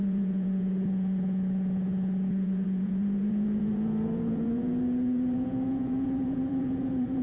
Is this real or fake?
fake